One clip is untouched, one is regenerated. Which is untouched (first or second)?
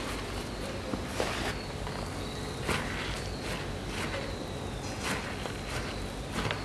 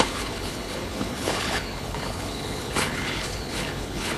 first